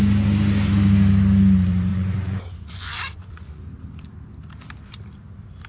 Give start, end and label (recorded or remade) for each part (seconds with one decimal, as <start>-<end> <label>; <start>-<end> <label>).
0.0-1.9 recorded; 1.9-3.6 remade; 3.6-5.7 recorded